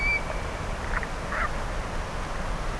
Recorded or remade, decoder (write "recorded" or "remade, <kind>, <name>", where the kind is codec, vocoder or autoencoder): recorded